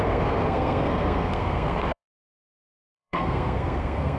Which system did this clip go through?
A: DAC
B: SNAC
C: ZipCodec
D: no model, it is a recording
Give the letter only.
B